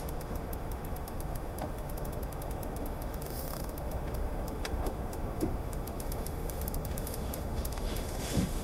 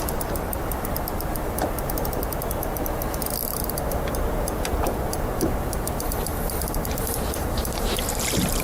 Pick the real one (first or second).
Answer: second